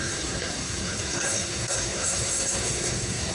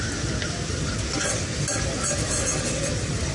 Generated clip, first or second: first